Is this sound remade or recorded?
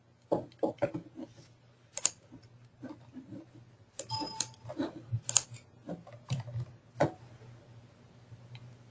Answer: recorded